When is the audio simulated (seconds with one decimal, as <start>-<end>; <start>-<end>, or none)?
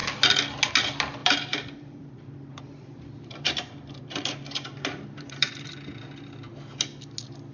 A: 1.2-5.7